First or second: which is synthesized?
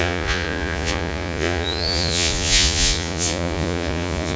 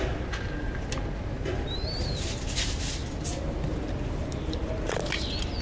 first